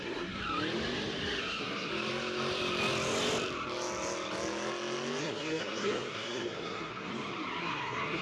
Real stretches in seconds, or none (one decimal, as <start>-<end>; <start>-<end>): 0.4-1.4; 1.9-5.2; 7.1-7.6